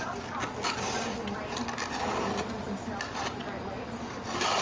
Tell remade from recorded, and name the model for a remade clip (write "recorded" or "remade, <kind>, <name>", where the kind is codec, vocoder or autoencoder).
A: recorded